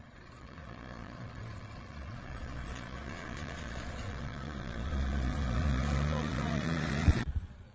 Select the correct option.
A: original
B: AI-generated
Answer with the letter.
B